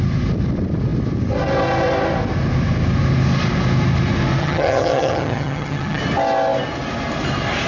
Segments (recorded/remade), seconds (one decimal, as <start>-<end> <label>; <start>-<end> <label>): 0.0-4.4 recorded; 4.4-6.0 remade; 6.0-7.7 recorded